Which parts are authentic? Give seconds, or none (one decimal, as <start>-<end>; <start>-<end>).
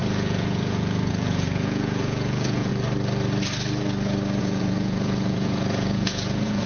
2.7-4.4